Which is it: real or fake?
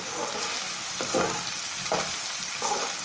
real